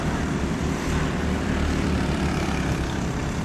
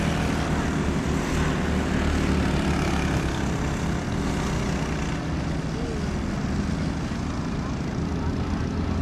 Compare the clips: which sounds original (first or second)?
second